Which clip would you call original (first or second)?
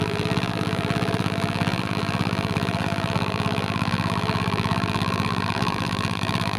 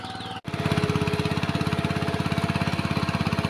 second